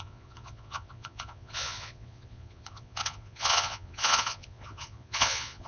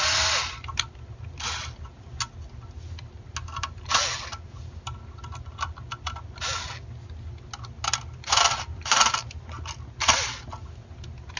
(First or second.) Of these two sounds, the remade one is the first